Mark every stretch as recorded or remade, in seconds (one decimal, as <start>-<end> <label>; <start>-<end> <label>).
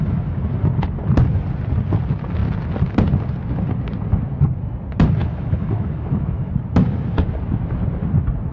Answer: 0.0-5.2 recorded; 5.2-6.5 remade; 6.5-8.5 recorded